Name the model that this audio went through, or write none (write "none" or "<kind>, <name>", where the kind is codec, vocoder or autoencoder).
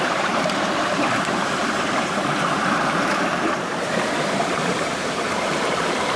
vocoder, BigVGAN v2